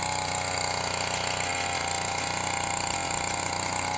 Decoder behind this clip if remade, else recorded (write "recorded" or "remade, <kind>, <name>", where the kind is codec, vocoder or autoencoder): recorded